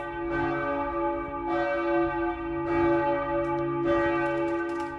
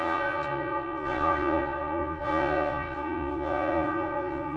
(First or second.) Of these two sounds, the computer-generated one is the second